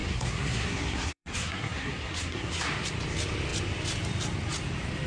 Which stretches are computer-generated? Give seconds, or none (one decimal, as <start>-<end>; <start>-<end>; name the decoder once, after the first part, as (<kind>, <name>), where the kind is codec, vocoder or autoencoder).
0.0-2.7 (codec, SNAC)